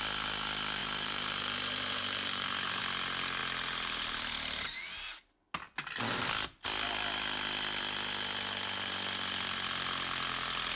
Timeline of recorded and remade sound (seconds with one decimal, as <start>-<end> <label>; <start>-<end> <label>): 0.0-0.8 recorded; 0.8-2.8 remade; 2.8-10.8 recorded